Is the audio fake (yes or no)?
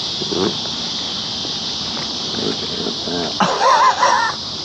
no